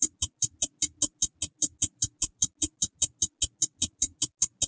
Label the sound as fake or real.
real